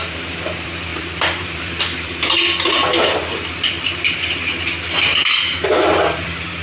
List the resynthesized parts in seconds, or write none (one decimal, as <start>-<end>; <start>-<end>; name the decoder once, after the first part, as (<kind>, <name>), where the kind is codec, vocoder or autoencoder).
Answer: 0.0-5.1 (vocoder, BigVGAN v2); 5.6-6.6